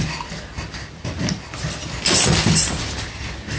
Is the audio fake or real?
real